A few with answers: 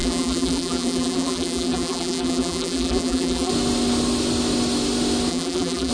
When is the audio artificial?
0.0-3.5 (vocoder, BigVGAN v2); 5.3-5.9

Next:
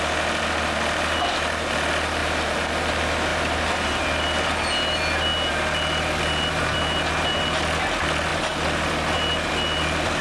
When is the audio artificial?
2.2-2.7 (vocoder, BigVGAN v2); 3.3-4.0

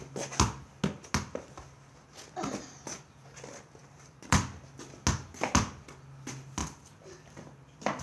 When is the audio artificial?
3.8-4.4 (vocoder, BigVGAN v2)

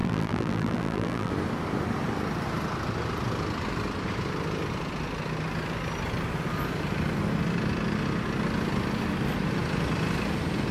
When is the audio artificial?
0.0-1.3 (vocoder, BigVGAN v2)

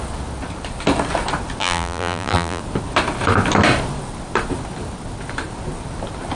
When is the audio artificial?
1.6-2.6 (vocoder, BigVGAN v2)

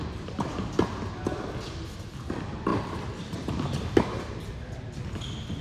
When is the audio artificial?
2.7-4.3 (vocoder, BigVGAN v2)

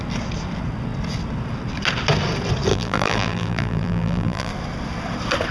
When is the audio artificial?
2.7-4.5 (vocoder, BigVGAN v2)

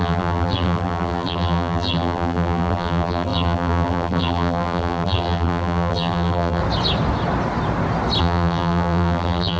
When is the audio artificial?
0.0-6.6 (vocoder, BigVGAN v2); 8.2-9.6